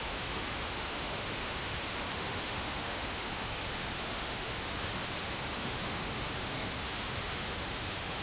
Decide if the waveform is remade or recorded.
remade